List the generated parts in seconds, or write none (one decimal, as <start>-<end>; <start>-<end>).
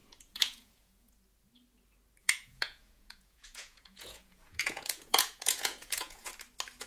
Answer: 0.0-1.1; 2.2-6.3